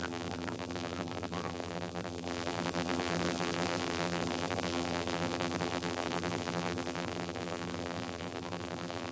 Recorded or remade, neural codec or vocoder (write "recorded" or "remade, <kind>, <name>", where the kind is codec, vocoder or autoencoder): remade, vocoder, BigVGAN v2